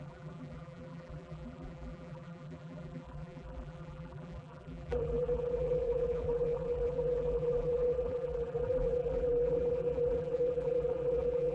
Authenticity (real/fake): fake